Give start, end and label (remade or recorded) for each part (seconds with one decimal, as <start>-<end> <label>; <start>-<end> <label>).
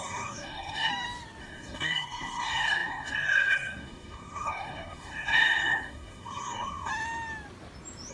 0.0-0.9 remade; 0.9-1.4 recorded; 1.4-6.9 remade; 6.9-8.1 recorded